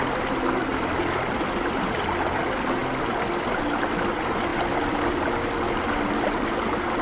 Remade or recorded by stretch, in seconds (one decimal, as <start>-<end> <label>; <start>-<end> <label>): 0.0-0.7 recorded; 0.7-2.4 remade; 2.4-7.0 recorded